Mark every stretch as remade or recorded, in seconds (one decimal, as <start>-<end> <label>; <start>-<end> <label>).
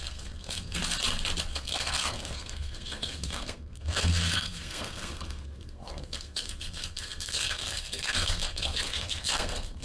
0.0-0.8 remade; 0.8-1.5 recorded; 1.5-9.8 remade